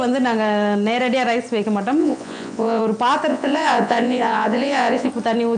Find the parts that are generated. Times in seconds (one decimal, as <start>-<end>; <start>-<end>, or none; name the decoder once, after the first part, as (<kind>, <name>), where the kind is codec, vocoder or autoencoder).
2.0-2.8 (vocoder, Vocos); 3.3-5.1